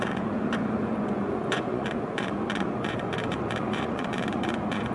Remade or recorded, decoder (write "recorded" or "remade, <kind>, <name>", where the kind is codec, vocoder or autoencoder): remade, vocoder, Vocos